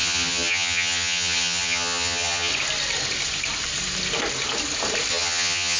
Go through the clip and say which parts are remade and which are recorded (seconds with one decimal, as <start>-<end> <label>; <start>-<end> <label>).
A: 0.0-2.5 remade; 2.5-5.1 recorded; 5.1-5.8 remade